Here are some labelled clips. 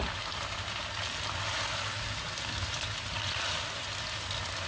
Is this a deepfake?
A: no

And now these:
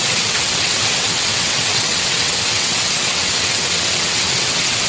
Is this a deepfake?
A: yes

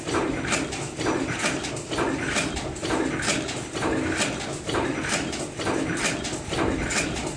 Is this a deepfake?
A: no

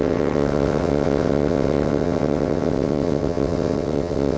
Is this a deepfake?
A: yes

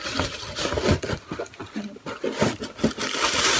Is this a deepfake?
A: no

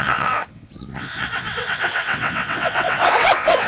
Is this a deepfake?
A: yes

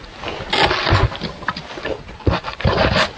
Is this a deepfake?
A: no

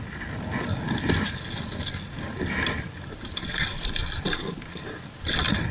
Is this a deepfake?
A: no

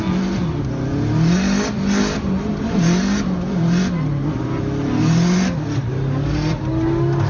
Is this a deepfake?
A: no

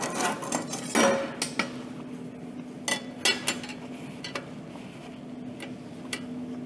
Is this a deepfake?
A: no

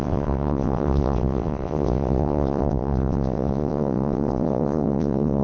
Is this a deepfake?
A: yes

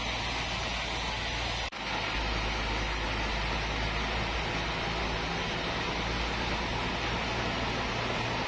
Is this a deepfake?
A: no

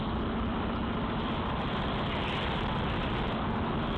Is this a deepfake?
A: no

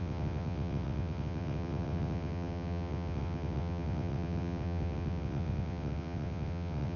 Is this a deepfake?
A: yes